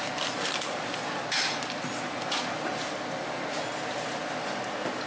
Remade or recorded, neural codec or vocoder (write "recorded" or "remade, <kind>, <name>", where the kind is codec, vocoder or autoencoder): recorded